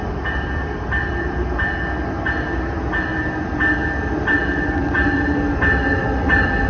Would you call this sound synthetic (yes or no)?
no